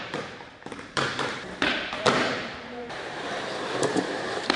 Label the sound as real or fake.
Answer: fake